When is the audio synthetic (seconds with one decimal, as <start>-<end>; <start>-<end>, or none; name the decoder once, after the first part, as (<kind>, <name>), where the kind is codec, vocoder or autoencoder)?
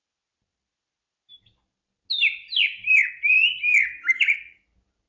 none